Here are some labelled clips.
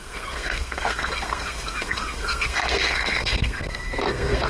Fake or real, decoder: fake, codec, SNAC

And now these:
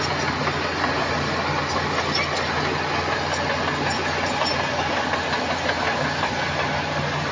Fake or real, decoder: real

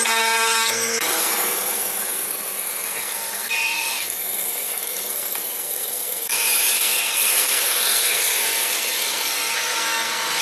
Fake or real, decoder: fake, codec, SNAC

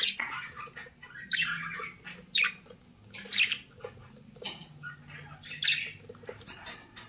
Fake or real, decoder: real